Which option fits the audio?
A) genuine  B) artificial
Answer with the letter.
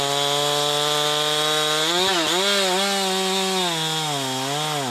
A